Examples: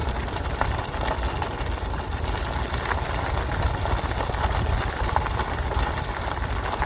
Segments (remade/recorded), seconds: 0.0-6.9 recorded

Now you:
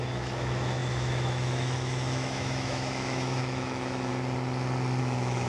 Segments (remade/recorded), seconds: 0.0-4.1 remade; 4.1-5.0 recorded; 5.0-5.5 remade

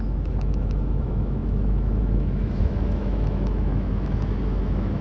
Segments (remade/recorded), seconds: 0.0-5.0 remade

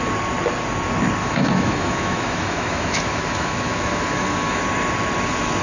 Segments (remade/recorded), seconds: 0.0-1.2 recorded; 1.2-4.6 remade; 4.6-5.6 recorded

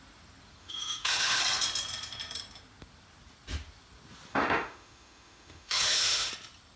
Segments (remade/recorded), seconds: 0.0-0.6 recorded; 0.6-1.4 remade; 1.4-4.3 recorded; 4.3-6.3 remade; 6.3-6.8 recorded

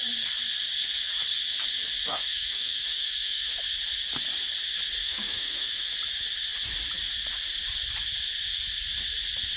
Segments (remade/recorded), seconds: 0.0-2.1 recorded; 2.1-3.6 remade; 3.6-5.0 recorded; 5.0-5.9 remade; 5.9-9.6 recorded